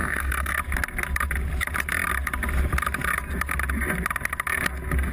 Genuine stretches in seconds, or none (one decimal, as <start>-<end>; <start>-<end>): 0.6-5.1